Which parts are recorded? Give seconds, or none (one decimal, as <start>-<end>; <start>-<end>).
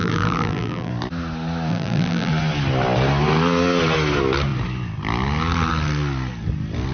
0.9-1.7; 2.3-6.9